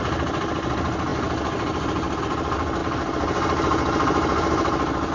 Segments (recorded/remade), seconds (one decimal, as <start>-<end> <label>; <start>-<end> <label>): 0.0-5.1 recorded